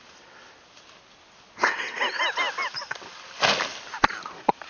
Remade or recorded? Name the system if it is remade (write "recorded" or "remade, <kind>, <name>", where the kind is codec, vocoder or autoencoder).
recorded